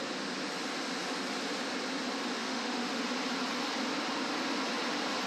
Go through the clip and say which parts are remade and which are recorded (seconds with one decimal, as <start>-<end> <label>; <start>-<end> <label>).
0.0-2.4 recorded; 2.4-3.0 remade; 3.0-5.3 recorded